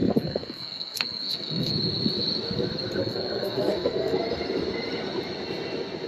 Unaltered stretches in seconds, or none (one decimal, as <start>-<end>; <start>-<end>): 1.7-3.0; 4.2-6.1